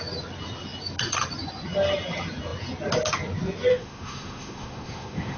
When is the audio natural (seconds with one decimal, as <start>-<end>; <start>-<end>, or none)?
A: 0.0-3.7